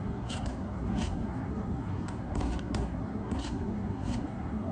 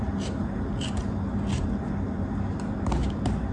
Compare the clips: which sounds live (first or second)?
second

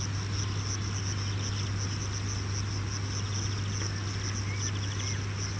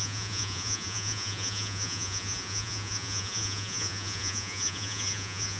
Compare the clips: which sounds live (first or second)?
first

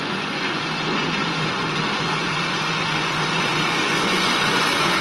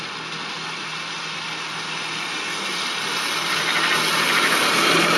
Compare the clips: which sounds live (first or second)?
second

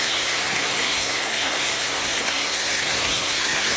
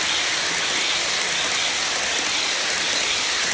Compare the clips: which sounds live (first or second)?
second